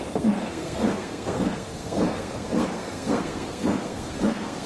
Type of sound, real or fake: fake